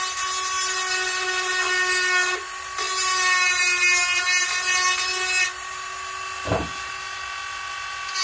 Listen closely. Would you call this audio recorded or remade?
recorded